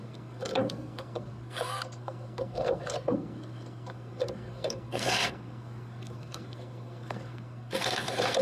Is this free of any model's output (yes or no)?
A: no